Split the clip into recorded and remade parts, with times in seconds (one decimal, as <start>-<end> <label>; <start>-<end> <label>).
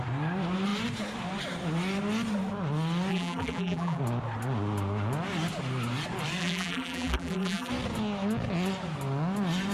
0.0-3.1 recorded; 3.1-4.0 remade; 4.0-6.4 recorded; 6.4-7.7 remade; 7.7-9.7 recorded